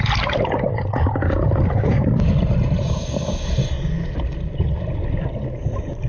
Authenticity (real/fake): real